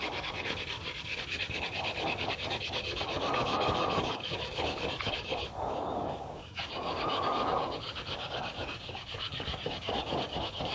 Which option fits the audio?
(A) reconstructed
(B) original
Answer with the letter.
A